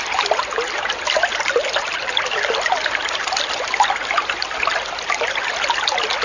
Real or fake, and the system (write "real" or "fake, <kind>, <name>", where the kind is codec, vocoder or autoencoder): real